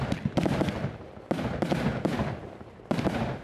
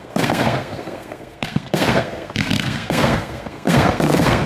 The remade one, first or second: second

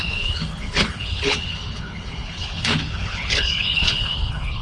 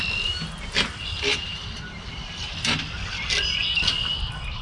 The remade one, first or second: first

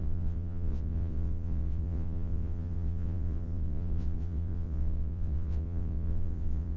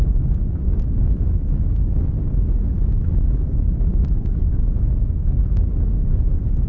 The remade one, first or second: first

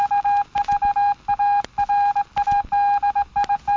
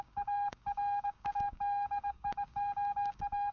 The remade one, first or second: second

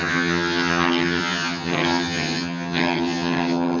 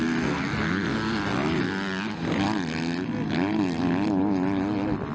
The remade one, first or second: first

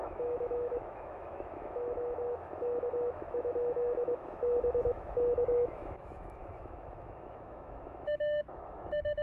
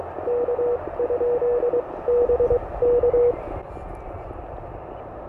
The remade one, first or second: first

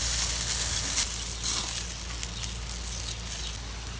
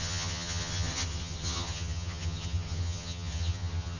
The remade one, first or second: second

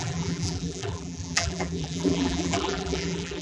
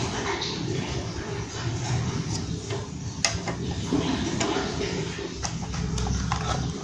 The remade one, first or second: first